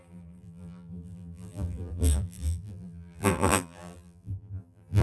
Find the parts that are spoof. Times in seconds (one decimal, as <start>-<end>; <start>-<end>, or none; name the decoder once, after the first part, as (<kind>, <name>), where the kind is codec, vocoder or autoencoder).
0.0-5.0 (vocoder, BigVGAN v2)